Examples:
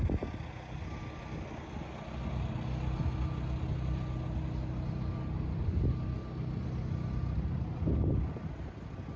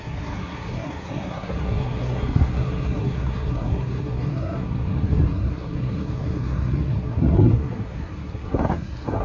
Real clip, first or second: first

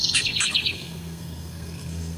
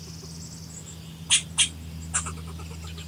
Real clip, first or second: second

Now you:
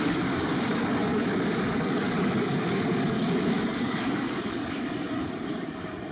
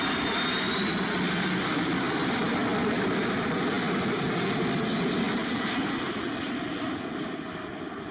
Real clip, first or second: second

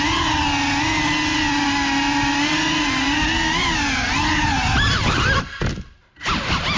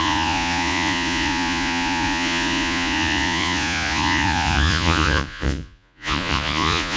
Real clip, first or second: first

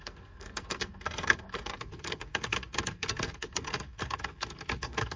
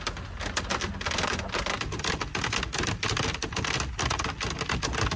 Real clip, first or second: second